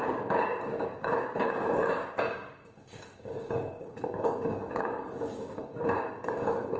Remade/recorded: remade